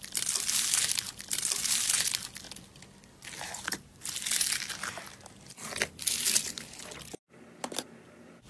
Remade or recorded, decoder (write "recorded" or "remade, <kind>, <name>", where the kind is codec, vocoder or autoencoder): recorded